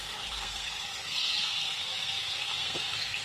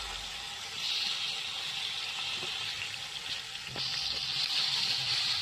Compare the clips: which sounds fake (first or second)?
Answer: first